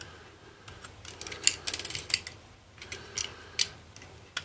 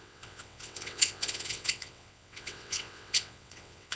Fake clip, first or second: second